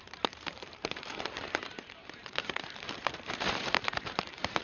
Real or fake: fake